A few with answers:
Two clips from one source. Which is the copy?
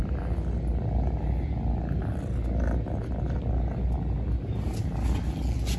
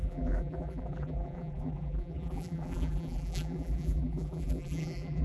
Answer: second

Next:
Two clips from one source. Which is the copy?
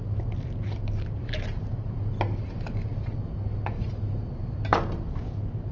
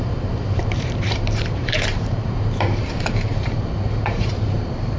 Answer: second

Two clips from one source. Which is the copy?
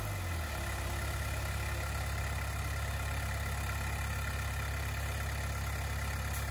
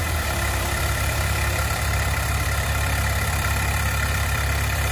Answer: second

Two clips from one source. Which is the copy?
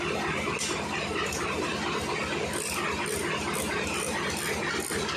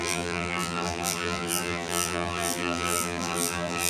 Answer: second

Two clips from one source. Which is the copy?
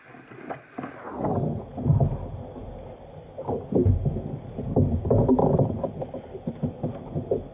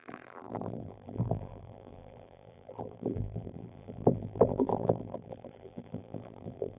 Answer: second